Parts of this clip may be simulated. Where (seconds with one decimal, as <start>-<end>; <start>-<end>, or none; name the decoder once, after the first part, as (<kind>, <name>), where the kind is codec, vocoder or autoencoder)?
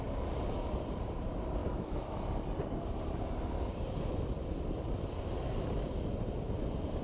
1.6-2.2 (autoencoder, DAC-VAE)